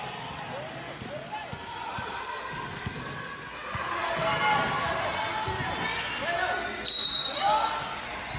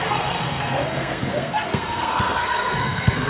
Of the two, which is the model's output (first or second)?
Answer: second